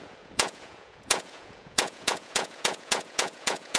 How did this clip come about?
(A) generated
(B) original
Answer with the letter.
A